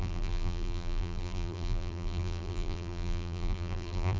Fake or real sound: fake